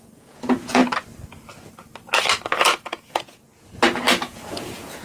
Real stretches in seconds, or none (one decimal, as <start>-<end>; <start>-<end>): 0.8-2.6